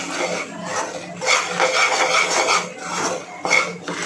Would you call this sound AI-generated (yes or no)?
no